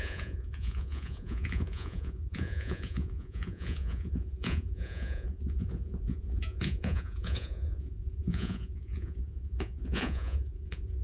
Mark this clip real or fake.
fake